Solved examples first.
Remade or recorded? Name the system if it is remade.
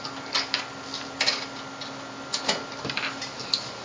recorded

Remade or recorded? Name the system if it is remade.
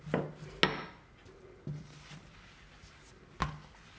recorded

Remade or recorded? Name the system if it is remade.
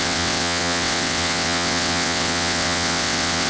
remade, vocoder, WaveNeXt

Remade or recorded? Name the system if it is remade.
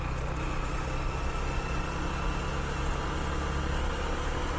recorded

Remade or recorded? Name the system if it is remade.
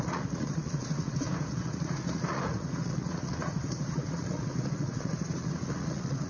remade, vocoder, Vocos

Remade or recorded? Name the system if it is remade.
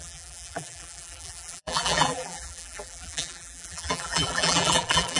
remade, vocoder, BigVGAN v2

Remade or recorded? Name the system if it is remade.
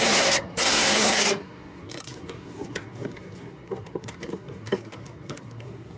remade, codec, SNAC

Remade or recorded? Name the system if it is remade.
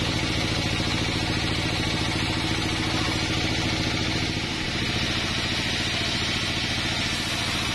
recorded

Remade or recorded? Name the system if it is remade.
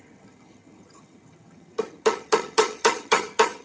remade, vocoder, HiFi-GAN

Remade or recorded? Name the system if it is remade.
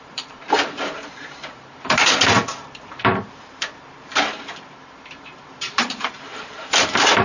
remade, vocoder, BigVGAN v2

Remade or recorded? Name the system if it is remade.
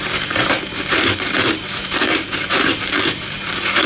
remade, vocoder, BigVGAN v2